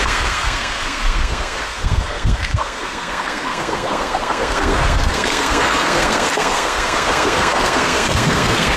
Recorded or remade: remade